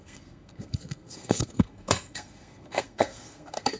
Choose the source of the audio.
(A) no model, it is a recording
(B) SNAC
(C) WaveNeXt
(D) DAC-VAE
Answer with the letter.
B